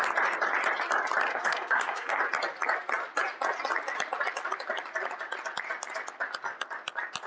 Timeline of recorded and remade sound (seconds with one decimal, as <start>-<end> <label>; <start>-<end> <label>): 0.0-1.3 recorded; 1.3-2.2 remade; 2.2-7.3 recorded